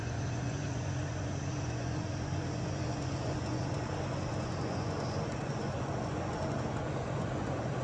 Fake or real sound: fake